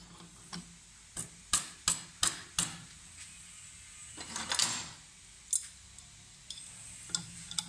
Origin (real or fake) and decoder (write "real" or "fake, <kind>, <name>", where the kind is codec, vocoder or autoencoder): real